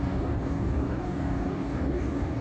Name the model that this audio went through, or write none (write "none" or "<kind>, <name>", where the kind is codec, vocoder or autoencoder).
codec, DAC